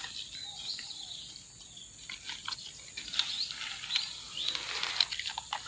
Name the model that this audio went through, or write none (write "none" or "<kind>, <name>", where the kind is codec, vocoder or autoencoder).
none